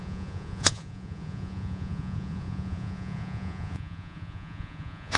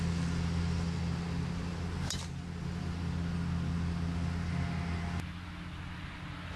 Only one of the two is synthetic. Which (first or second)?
first